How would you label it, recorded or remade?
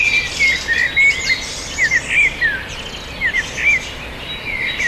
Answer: recorded